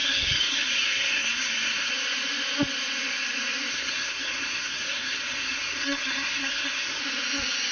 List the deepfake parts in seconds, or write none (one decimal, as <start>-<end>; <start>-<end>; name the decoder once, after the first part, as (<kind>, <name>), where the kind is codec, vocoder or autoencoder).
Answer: 0.0-1.9 (codec, SNAC); 3.7-7.0